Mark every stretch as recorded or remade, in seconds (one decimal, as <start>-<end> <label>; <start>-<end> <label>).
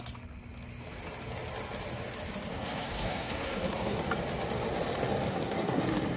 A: 0.0-2.5 recorded; 2.5-4.0 remade; 4.0-5.3 recorded; 5.3-5.8 remade; 5.8-6.2 recorded